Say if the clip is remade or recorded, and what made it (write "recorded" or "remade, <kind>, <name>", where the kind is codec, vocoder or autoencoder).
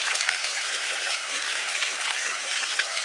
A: remade, codec, SNAC